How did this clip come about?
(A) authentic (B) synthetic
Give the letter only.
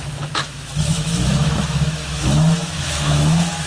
B